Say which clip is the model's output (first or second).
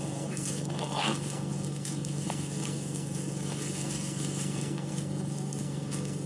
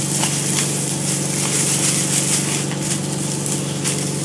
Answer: first